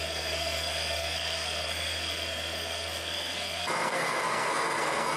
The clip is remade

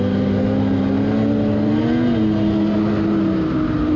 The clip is recorded